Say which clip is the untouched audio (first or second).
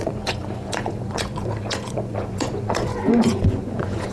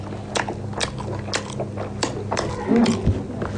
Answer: second